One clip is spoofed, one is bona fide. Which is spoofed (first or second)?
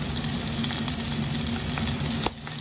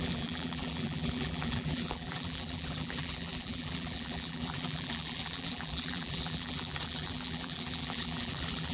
second